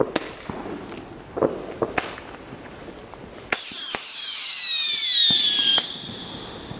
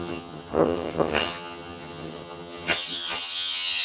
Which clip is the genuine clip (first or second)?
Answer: first